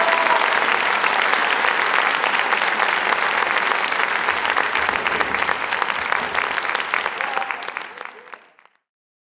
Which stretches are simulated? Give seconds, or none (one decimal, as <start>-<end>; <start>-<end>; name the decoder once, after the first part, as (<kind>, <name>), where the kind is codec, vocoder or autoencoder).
none